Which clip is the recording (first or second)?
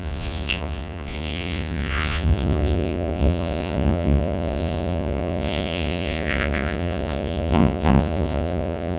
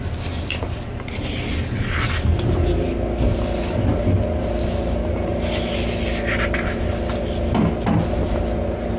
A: second